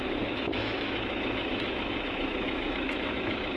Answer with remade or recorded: remade